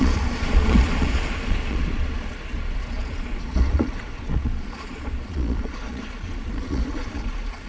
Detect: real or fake fake